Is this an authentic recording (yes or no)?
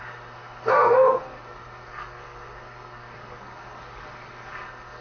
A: no